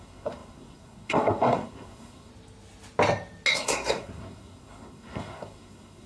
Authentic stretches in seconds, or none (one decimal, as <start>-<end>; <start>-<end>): 2.3-3.5